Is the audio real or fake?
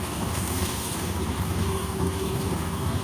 fake